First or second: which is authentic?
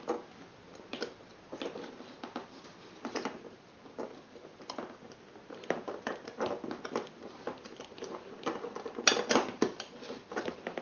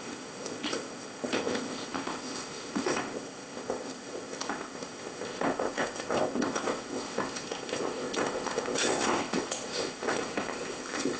first